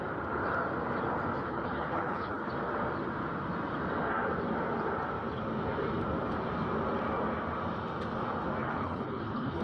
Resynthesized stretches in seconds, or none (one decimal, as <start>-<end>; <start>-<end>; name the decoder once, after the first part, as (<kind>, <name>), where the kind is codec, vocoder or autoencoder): 1.5-2.5 (codec, HILCodec); 8.6-9.6